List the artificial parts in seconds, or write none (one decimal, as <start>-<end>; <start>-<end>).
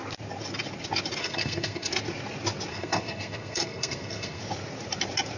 1.2-1.9; 2.7-4.4